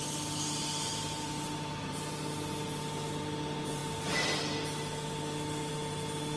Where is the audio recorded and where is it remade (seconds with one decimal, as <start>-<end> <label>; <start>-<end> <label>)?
0.0-6.4 recorded